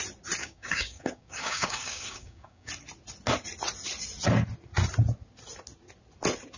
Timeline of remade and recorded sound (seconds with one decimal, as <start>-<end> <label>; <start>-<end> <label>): 0.0-0.4 recorded; 0.4-2.7 remade; 2.7-6.6 recorded